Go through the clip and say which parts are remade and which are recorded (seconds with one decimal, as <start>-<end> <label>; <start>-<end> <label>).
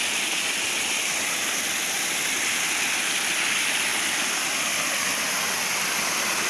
0.0-6.5 recorded